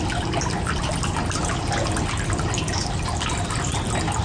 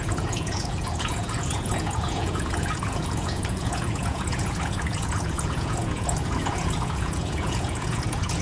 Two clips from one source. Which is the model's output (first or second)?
second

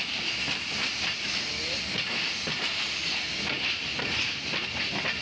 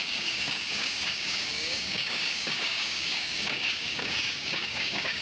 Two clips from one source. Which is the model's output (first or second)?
second